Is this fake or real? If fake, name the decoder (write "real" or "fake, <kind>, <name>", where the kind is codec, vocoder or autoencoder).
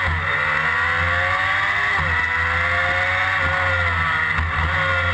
real